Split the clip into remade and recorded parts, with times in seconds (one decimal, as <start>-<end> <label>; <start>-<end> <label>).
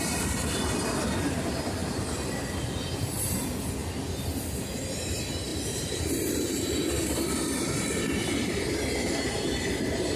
0.0-5.5 recorded; 5.5-8.8 remade; 8.8-10.2 recorded